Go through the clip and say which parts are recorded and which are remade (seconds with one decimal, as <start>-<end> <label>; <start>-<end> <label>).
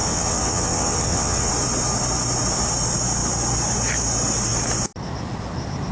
0.0-1.5 remade; 1.5-5.9 recorded